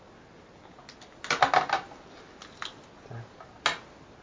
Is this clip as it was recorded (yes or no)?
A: yes